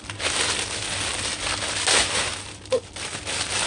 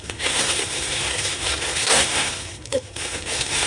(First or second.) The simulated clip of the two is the second